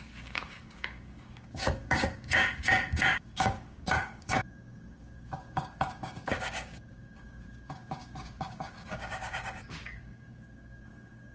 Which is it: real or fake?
fake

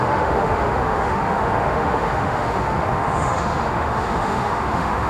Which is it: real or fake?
fake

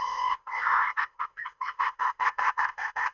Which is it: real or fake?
fake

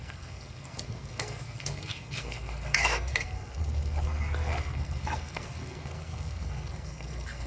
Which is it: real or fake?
fake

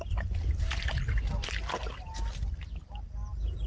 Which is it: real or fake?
real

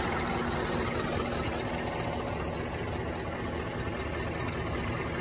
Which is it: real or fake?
real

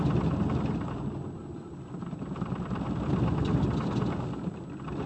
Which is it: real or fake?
real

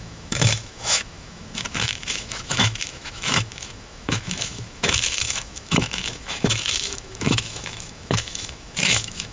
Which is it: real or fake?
fake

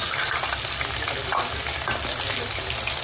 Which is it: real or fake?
real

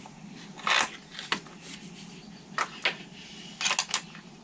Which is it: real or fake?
real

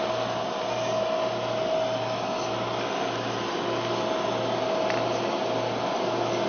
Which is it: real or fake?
real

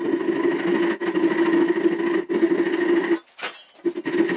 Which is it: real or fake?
real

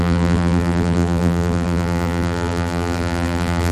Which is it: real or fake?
fake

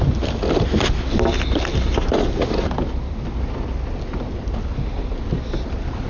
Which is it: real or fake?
real